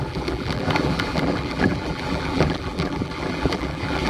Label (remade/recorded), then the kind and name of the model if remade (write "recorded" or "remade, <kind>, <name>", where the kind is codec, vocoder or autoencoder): remade, vocoder, BigVGAN v2